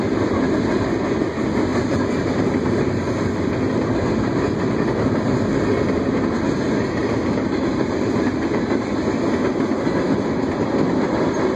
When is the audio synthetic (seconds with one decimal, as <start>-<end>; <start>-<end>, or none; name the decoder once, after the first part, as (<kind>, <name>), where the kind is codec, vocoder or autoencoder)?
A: 1.7-3.4 (vocoder, BigVGAN v2); 7.0-8.9